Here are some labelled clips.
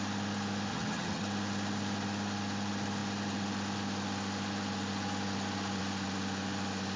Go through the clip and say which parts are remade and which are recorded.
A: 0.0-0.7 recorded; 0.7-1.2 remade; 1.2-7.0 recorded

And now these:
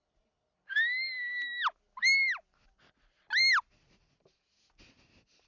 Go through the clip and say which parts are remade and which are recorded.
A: 0.0-5.5 recorded

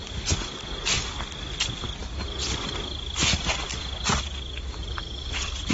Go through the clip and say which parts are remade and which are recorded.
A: 0.0-5.7 recorded

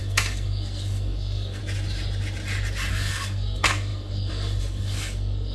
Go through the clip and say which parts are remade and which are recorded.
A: 0.0-1.6 remade; 1.6-2.9 recorded; 2.9-5.5 remade